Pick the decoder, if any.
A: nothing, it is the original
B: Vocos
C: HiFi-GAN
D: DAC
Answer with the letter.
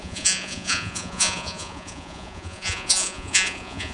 B